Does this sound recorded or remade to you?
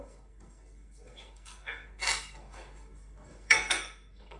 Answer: remade